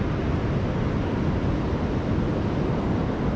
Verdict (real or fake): real